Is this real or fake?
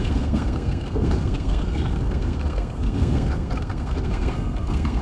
fake